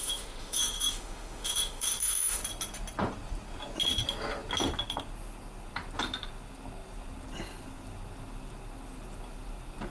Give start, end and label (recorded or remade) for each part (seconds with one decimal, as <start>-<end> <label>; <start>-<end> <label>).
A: 0.0-2.4 remade; 2.4-9.9 recorded